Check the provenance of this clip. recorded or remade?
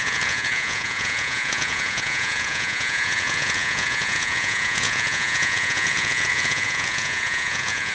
remade